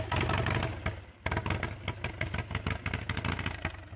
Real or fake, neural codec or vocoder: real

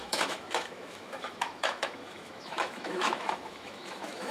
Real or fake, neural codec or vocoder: fake, autoencoder, DAC-VAE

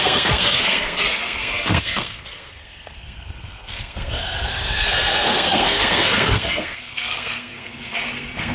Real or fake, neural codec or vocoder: fake, codec, SNAC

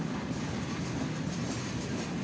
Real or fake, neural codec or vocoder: real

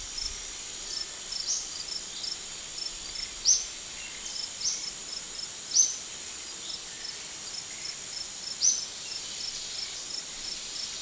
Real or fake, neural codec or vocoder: real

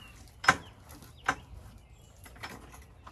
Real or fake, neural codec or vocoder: real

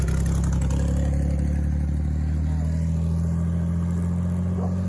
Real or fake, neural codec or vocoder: real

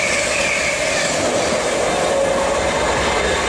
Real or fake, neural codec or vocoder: real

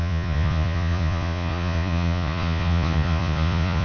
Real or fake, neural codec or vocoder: fake, vocoder, Vocos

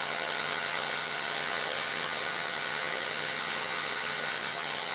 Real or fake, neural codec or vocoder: fake, vocoder, HiFi-GAN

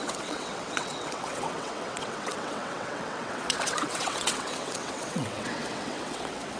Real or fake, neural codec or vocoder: fake, vocoder, WaveNeXt